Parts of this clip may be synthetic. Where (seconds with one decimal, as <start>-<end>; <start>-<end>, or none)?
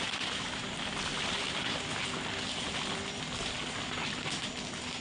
none